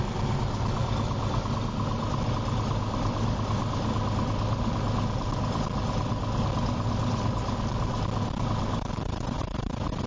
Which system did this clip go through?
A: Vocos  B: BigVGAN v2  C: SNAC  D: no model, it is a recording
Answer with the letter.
D